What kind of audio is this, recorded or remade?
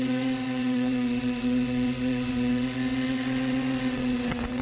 remade